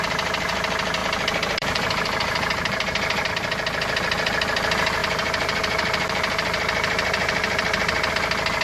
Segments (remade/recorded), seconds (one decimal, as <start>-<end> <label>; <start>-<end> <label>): 0.0-1.0 recorded; 1.0-3.3 remade; 3.3-5.0 recorded; 5.0-8.1 remade; 8.1-8.6 recorded